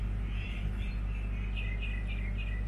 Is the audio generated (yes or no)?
no